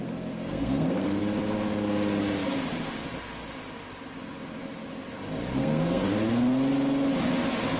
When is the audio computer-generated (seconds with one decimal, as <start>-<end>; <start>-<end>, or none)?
0.0-1.2; 5.6-6.1